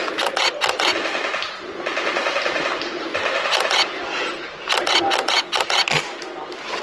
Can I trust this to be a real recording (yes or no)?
yes